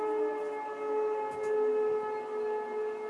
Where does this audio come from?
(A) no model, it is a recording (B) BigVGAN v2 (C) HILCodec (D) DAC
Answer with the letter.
A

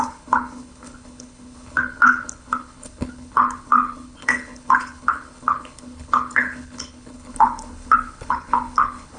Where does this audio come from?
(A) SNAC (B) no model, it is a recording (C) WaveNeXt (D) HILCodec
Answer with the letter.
D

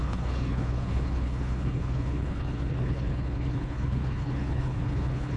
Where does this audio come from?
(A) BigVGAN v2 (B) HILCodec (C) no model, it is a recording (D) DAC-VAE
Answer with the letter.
B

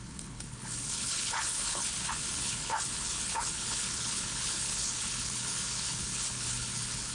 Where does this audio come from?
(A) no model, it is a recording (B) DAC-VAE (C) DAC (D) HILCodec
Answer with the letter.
D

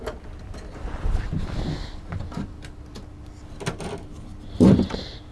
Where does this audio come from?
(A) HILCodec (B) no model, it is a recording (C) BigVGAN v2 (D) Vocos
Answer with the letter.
B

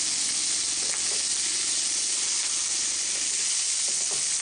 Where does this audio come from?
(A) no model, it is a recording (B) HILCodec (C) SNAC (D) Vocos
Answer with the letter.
A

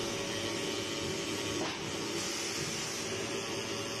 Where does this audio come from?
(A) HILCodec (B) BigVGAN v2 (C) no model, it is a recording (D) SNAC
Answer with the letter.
C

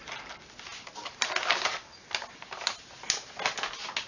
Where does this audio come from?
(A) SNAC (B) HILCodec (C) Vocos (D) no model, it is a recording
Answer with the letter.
D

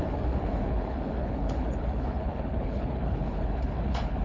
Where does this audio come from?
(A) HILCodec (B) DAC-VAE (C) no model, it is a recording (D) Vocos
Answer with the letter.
A